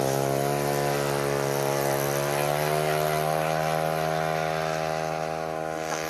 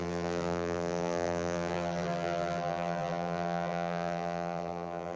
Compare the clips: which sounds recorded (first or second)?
first